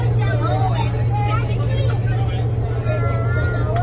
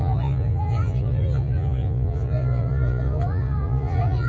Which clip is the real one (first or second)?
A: first